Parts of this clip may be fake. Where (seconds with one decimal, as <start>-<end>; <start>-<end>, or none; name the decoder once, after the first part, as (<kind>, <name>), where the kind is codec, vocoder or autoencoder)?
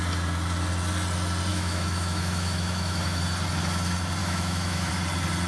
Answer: 1.5-3.2 (autoencoder, DAC-VAE); 4.2-4.9